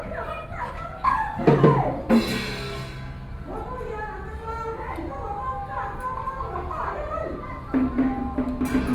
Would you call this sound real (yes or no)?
yes